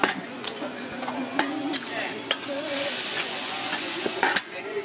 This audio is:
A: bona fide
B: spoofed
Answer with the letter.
B